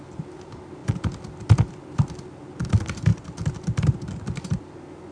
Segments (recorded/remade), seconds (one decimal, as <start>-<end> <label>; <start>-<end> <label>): 0.0-5.1 recorded